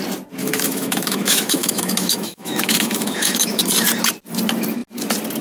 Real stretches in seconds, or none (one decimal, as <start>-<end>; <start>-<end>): 0.0-0.4; 3.6-5.4